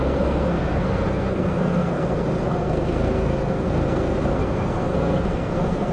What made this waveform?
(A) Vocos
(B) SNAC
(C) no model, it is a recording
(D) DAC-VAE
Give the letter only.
B